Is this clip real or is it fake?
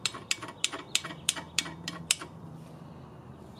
fake